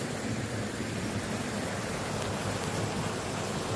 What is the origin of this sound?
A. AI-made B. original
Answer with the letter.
B